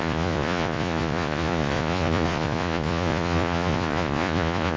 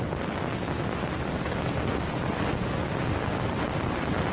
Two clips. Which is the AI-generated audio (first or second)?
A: first